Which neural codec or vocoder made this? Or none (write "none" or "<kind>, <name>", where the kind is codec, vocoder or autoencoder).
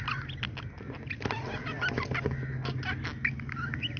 none